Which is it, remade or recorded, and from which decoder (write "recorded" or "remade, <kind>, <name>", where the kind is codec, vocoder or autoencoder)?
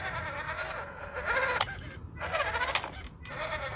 recorded